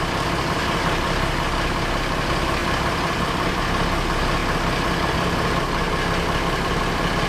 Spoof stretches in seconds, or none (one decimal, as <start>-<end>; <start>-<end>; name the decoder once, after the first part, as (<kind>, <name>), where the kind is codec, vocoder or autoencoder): 2.6-3.6 (vocoder, BigVGAN v2)